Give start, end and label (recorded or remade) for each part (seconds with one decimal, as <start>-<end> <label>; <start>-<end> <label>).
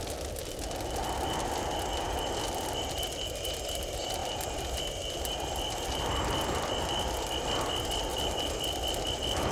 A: 0.0-8.1 recorded; 8.1-8.6 remade; 8.6-9.5 recorded